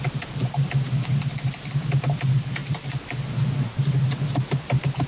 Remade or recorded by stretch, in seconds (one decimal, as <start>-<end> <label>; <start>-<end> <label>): 0.0-5.1 recorded